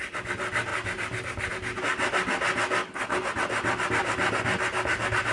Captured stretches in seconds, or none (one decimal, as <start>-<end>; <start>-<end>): 0.0-5.3